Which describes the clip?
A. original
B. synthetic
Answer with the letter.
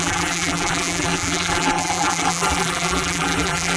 B